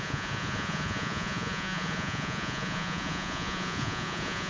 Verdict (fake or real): fake